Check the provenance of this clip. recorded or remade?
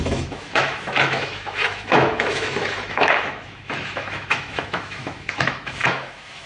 remade